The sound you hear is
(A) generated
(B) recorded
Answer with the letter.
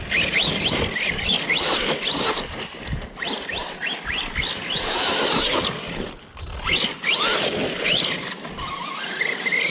B